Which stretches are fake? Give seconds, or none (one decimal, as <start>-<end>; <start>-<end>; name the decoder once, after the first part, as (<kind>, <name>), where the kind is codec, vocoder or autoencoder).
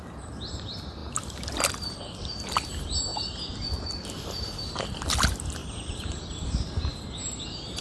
5.6-6.2 (vocoder, BigVGAN v2); 6.9-7.8